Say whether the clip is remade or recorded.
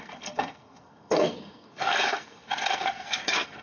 remade